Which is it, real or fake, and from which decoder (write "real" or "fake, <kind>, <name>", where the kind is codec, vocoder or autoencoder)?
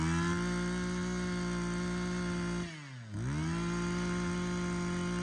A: real